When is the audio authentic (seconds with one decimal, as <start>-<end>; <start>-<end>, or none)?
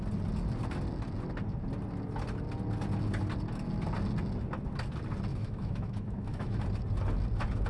0.0-5.3; 6.6-7.7